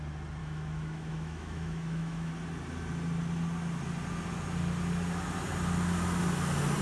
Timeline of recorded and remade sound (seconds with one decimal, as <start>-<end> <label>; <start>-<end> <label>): 0.0-0.4 recorded; 0.4-2.3 remade; 2.3-6.8 recorded